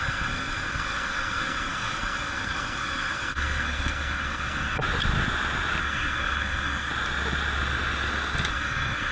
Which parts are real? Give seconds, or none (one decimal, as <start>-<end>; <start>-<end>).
4.8-5.8; 6.9-8.5

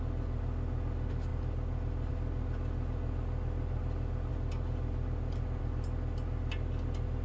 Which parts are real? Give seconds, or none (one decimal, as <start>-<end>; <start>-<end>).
0.0-1.3; 2.1-4.3; 5.6-7.2

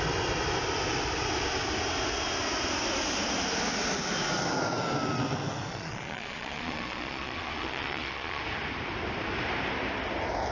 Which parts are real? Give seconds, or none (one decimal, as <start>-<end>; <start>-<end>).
0.0-5.7; 8.4-10.5

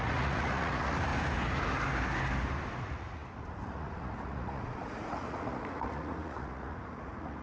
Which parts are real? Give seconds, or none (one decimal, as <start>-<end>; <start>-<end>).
1.1-2.8

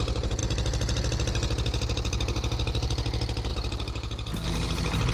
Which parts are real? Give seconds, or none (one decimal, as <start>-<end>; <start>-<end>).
0.4-3.5; 4.3-5.1

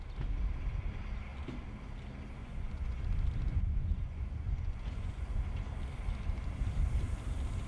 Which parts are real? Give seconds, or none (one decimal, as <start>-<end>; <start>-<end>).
0.0-2.4; 3.0-3.5; 5.4-7.7